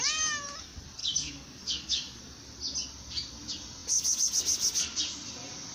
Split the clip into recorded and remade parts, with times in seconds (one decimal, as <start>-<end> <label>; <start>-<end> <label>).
0.0-1.0 recorded; 1.0-2.2 remade; 2.2-5.7 recorded